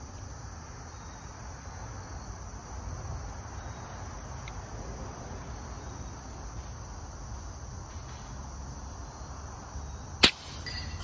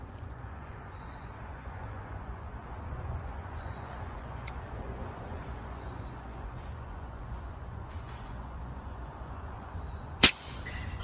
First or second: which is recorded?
first